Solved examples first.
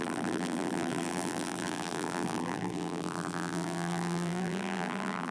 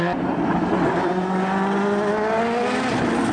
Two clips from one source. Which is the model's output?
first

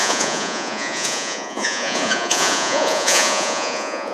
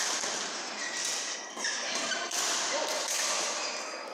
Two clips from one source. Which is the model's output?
first